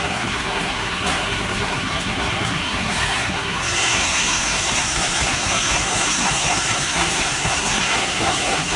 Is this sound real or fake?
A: fake